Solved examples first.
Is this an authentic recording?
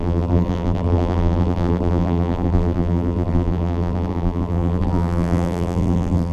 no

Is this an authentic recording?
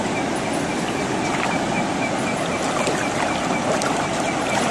yes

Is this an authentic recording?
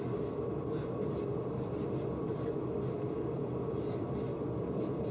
yes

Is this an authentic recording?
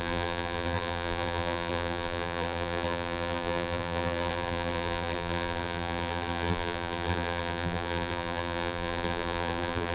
no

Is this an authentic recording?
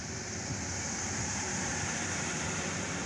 no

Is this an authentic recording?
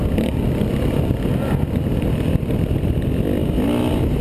yes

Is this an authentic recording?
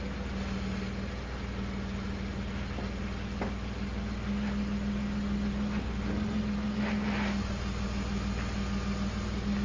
yes